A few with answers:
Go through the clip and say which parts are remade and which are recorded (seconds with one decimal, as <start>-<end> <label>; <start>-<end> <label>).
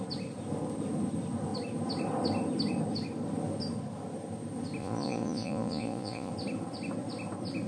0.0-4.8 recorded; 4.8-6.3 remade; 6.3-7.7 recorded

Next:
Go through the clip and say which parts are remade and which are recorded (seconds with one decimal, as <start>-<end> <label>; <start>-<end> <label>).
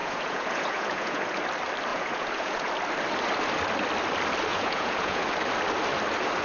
0.0-1.4 remade; 1.4-1.9 recorded; 1.9-2.7 remade; 2.7-4.5 recorded; 4.5-5.2 remade; 5.2-6.4 recorded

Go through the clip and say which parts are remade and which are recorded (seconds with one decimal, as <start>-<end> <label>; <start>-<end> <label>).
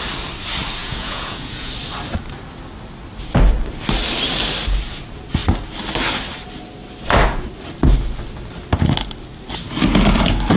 0.0-0.8 recorded; 0.8-1.7 remade; 1.7-10.6 recorded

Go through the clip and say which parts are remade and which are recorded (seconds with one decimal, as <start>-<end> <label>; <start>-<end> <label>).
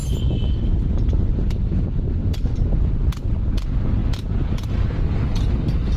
0.0-6.0 recorded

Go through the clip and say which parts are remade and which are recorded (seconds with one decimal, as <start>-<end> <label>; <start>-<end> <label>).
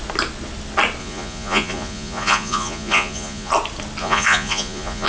0.0-1.0 recorded; 1.0-3.5 remade; 3.5-4.0 recorded; 4.0-5.1 remade